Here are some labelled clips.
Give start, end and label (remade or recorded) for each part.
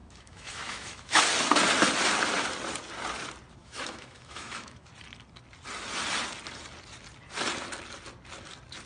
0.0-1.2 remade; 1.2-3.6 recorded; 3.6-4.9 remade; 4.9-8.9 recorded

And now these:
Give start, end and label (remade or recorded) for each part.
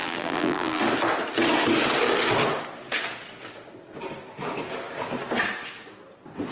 0.0-0.8 remade; 0.8-6.5 recorded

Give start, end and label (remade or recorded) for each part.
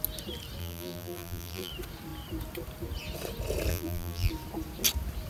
0.0-0.6 recorded; 0.6-1.7 remade; 1.7-3.7 recorded; 3.7-4.3 remade; 4.3-5.3 recorded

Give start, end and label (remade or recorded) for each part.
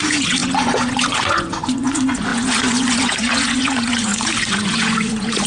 0.0-5.5 remade